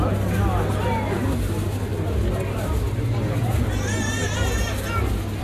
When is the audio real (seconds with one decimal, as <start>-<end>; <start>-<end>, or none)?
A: 0.0-5.4